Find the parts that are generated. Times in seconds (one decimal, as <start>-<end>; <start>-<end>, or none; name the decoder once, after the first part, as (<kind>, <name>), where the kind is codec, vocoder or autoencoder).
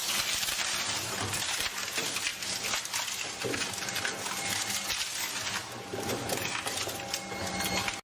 none